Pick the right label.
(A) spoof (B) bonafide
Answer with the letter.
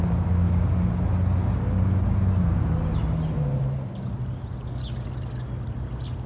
B